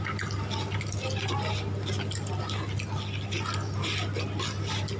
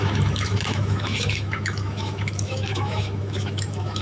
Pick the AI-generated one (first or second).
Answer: second